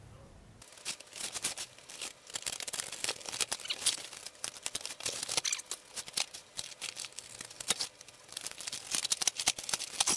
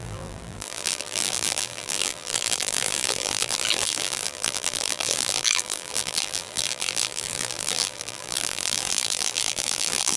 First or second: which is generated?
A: second